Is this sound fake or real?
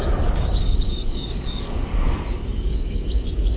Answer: fake